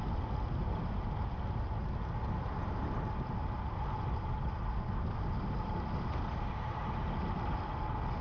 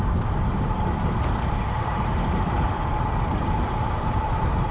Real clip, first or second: first